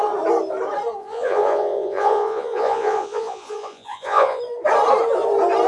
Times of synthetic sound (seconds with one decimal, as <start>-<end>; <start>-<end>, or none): 1.0-4.4